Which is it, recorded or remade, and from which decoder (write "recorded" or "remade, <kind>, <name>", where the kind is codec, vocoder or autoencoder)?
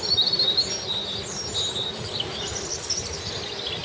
recorded